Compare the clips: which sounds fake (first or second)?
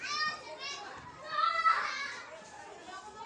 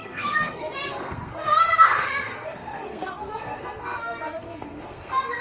second